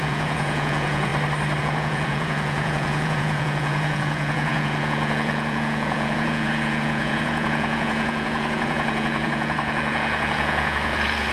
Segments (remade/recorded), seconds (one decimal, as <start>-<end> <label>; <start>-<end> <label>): 0.0-1.1 remade; 1.1-1.6 recorded; 1.6-11.3 remade